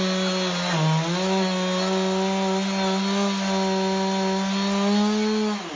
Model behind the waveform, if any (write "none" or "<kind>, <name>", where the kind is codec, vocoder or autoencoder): none